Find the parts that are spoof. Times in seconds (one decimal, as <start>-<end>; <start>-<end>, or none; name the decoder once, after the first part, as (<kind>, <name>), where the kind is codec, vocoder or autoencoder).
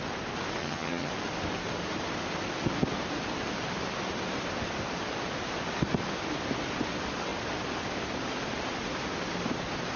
0.6-1.1 (vocoder, HiFi-GAN)